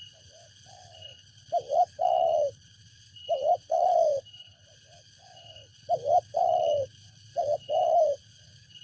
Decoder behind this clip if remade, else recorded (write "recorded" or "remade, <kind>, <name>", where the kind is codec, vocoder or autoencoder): remade, codec, HILCodec